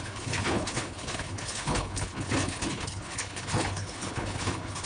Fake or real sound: fake